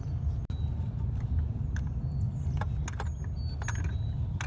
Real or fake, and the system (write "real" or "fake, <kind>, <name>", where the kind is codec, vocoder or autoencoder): real